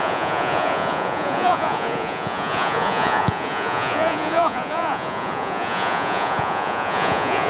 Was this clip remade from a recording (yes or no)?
yes